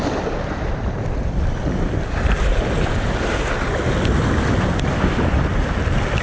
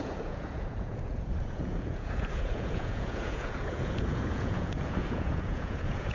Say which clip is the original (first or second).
first